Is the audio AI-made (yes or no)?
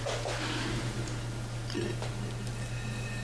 no